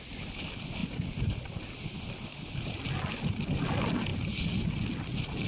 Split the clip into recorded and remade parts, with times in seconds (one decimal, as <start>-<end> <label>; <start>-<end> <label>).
0.0-5.5 recorded